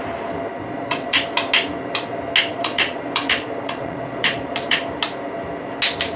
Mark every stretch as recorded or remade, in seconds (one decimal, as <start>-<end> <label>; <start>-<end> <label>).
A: 0.0-0.5 recorded; 0.5-1.2 remade; 1.2-2.5 recorded; 2.5-4.8 remade; 4.8-6.2 recorded